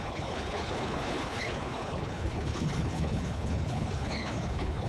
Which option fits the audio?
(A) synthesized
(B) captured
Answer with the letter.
A